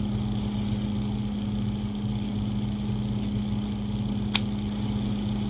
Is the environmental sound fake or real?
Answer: real